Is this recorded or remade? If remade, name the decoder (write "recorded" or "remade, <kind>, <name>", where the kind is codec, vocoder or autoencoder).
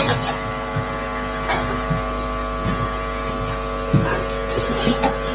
recorded